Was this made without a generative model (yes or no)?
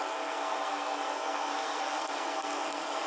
no